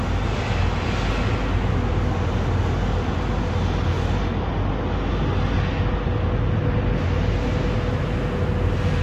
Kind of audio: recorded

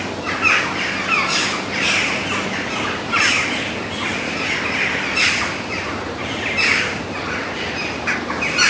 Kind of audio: recorded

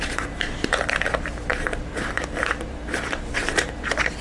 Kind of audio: remade